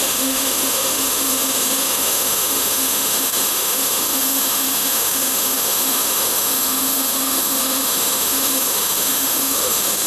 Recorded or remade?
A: remade